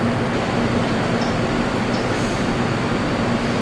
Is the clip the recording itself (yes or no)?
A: no